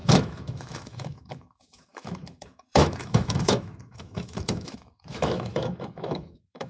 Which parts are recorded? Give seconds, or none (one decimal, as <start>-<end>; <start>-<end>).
none